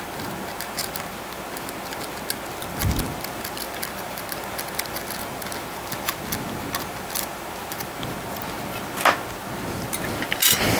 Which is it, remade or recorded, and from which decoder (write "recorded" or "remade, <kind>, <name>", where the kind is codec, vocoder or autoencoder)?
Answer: recorded